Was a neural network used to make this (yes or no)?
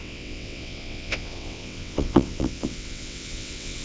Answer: yes